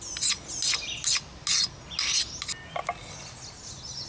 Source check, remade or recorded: recorded